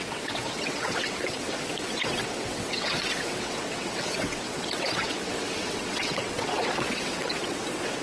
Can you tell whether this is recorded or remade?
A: remade